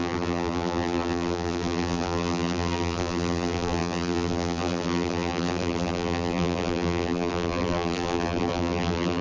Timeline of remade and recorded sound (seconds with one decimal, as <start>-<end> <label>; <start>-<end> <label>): 0.0-9.2 remade